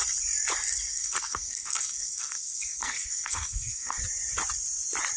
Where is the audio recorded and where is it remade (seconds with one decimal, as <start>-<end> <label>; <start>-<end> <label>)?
0.0-0.9 recorded; 0.9-4.0 remade; 4.0-5.2 recorded